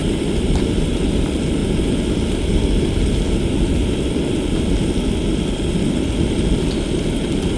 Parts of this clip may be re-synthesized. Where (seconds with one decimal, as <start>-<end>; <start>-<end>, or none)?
none